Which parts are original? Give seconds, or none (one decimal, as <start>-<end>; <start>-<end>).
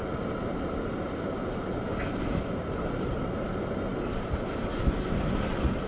0.0-5.9